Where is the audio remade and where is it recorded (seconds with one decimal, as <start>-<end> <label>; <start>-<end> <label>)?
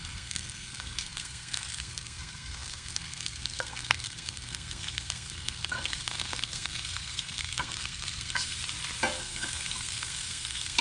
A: 0.0-8.6 remade; 8.6-9.2 recorded; 9.2-10.8 remade